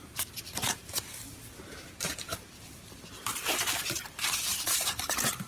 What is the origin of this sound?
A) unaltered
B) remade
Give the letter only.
B